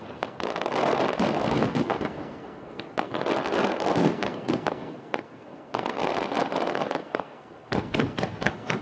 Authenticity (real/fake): fake